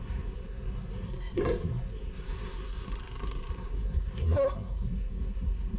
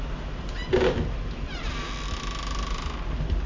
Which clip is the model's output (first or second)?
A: first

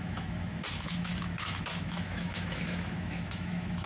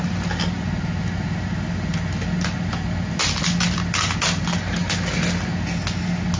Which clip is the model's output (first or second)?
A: first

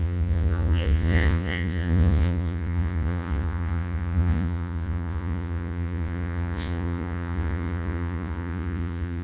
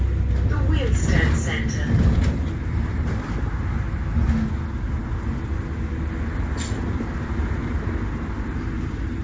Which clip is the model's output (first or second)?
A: first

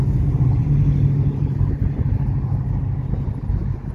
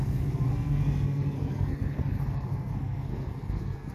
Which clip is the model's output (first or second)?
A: second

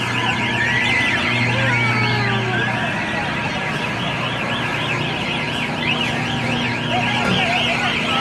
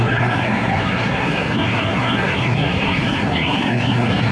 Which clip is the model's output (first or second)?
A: second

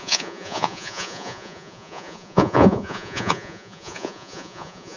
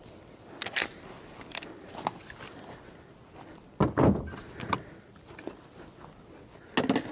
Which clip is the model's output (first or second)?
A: first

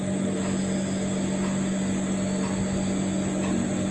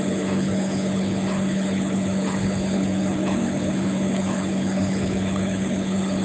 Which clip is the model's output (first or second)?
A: second